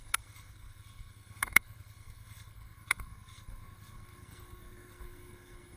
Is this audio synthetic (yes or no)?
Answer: yes